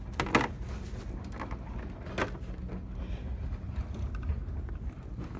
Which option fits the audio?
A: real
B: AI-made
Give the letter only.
A